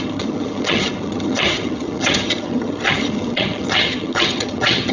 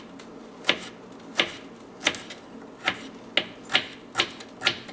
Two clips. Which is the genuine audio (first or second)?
second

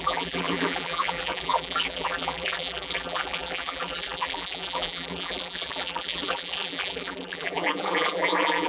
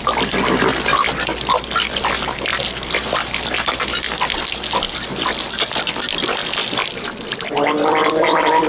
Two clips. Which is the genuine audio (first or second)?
second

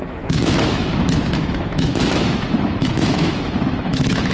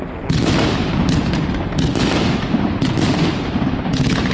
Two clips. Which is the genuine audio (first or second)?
second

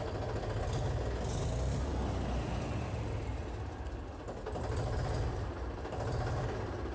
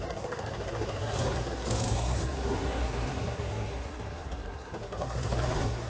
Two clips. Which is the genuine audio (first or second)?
first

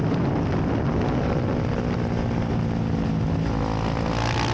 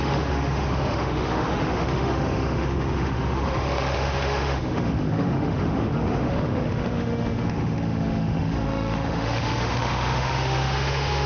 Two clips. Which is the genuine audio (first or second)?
first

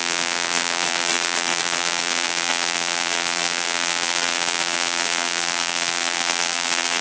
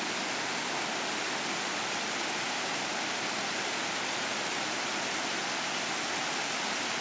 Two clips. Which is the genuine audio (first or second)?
second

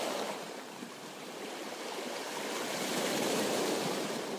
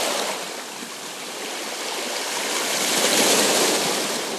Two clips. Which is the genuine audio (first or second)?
second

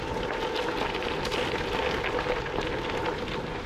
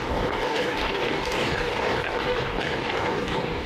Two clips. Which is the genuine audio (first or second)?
first